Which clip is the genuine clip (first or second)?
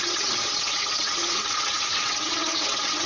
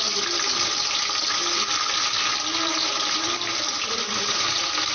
second